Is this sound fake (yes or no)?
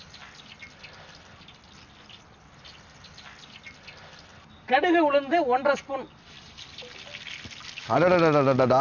no